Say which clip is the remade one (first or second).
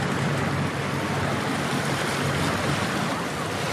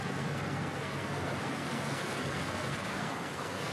second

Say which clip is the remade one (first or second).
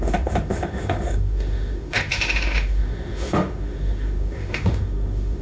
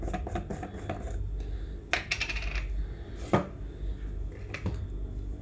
first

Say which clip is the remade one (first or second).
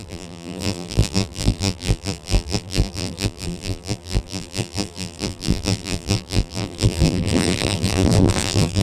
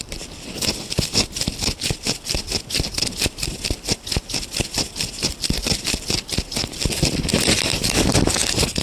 first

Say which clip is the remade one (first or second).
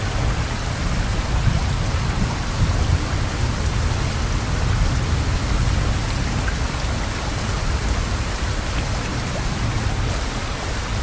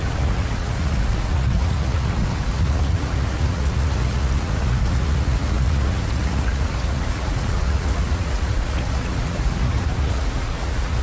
second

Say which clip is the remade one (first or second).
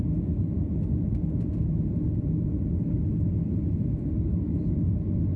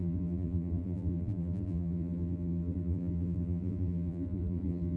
second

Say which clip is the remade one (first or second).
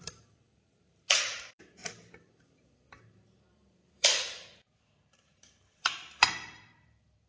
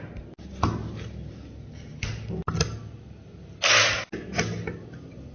first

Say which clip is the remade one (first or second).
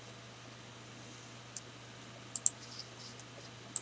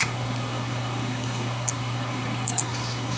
second